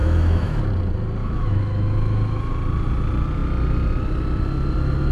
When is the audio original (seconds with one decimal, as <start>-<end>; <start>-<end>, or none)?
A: 0.6-1.2; 2.5-5.1